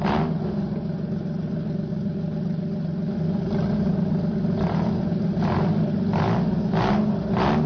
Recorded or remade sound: recorded